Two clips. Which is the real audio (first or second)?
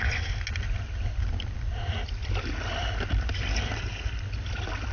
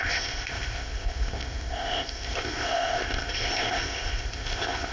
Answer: first